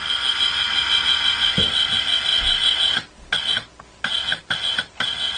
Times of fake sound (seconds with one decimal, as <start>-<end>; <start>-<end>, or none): none